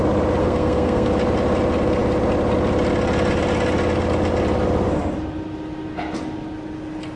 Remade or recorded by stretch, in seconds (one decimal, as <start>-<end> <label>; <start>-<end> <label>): 0.0-0.4 recorded; 0.4-1.1 remade; 1.1-7.2 recorded